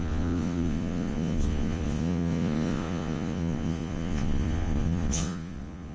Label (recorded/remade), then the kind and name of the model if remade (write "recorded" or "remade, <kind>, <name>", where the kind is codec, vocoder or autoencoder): remade, vocoder, Vocos